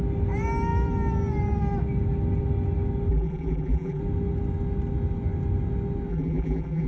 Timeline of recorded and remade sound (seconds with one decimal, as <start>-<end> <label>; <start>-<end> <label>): 0.0-3.1 recorded; 3.1-4.0 remade; 4.0-6.1 recorded; 6.1-6.9 remade